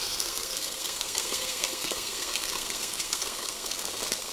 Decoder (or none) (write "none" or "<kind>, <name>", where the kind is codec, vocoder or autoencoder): codec, SNAC